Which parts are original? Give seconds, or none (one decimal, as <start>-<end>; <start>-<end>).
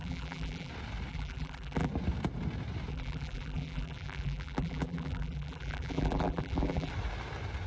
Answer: 0.7-1.1; 1.9-2.9; 6.9-7.7